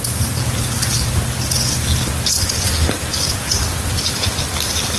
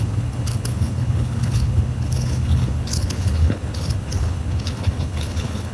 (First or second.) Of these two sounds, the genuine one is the first